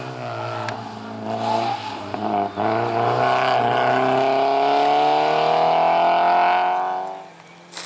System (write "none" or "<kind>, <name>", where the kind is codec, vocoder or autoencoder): none